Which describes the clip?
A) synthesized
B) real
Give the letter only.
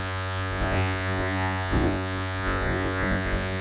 A